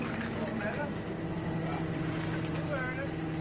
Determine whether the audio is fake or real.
real